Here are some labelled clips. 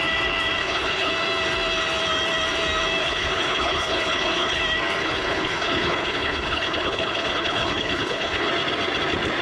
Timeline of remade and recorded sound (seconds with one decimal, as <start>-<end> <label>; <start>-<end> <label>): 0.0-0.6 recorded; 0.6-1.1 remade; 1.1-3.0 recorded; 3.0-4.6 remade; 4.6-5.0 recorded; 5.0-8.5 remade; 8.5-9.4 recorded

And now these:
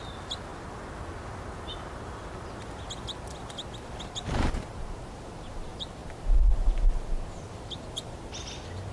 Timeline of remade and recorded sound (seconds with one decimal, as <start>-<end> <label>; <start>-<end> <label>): 0.0-8.9 recorded

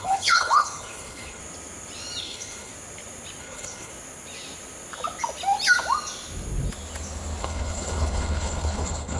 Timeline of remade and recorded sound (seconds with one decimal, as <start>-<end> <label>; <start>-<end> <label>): 0.0-1.4 remade; 1.4-2.2 recorded; 2.2-2.7 remade; 2.7-3.4 recorded; 3.4-3.9 remade; 3.9-7.4 recorded; 7.4-9.2 remade